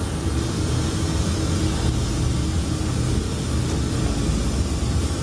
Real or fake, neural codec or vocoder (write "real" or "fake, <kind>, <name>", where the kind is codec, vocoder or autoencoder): real